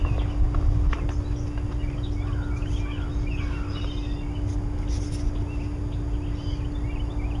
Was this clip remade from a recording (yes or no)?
no